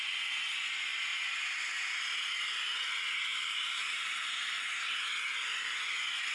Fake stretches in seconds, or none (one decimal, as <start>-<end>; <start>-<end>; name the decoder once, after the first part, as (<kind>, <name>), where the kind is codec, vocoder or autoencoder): 3.3-4.4 (vocoder, BigVGAN v2)